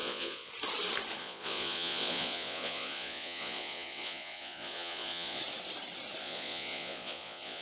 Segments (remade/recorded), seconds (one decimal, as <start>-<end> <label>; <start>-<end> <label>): 0.0-0.5 remade; 0.5-1.2 recorded; 1.2-5.4 remade; 5.4-6.2 recorded; 6.2-7.6 remade